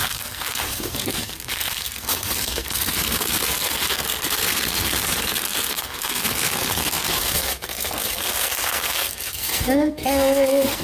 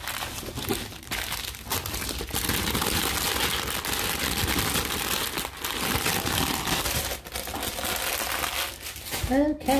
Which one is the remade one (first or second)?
first